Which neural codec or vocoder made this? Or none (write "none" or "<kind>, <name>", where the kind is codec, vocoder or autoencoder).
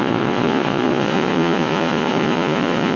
vocoder, Vocos